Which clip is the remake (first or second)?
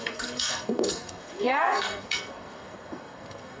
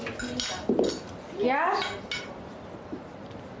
first